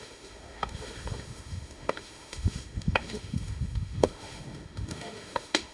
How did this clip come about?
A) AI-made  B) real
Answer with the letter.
A